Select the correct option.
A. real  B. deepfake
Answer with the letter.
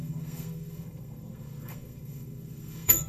B